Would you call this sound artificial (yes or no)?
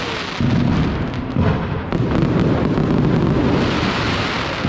no